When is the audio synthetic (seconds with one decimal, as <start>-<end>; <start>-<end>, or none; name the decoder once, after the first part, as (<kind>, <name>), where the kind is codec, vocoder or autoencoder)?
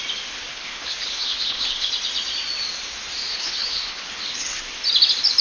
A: 0.5-1.9 (codec, HILCodec); 3.3-4.6